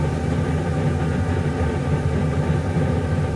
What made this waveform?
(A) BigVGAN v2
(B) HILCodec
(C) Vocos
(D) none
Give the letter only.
D